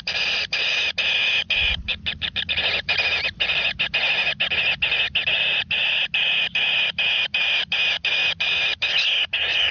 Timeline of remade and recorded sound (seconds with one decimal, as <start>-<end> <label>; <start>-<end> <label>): 0.0-5.2 recorded; 5.2-6.0 remade; 6.0-9.7 recorded